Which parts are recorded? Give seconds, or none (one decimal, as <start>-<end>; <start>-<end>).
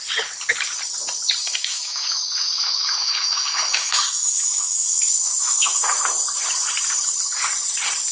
0.0-1.4; 5.9-8.1